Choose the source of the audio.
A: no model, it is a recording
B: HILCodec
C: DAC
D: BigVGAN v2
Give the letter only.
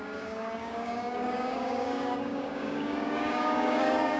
C